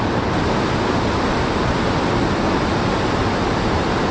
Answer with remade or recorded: recorded